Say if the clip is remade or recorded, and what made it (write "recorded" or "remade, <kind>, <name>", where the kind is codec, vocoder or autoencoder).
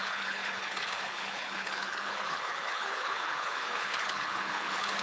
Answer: remade, codec, HILCodec